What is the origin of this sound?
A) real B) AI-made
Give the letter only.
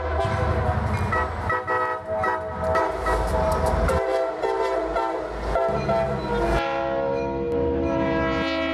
A